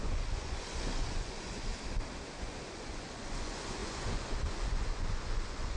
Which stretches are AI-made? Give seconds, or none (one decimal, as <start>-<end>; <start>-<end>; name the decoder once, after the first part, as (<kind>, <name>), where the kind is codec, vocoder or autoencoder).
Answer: 0.0-1.7 (vocoder, Vocos); 2.4-5.8